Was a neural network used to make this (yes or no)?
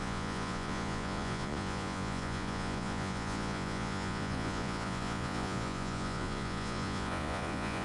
yes